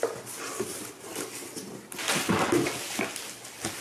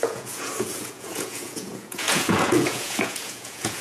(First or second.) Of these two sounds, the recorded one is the first